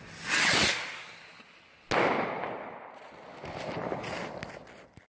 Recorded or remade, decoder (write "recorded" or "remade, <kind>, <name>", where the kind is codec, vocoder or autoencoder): recorded